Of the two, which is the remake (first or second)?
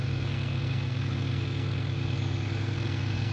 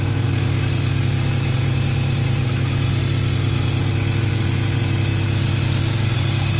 first